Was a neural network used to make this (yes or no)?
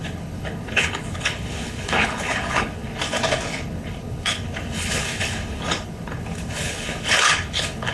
yes